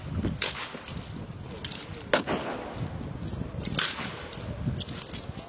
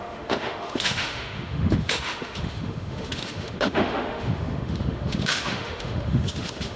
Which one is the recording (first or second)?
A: first